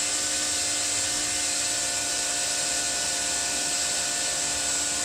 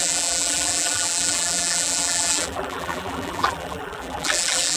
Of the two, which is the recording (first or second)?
first